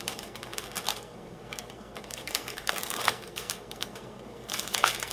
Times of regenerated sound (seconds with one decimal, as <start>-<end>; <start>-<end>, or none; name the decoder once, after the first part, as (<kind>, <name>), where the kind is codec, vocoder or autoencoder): 0.0-5.1 (codec, SNAC)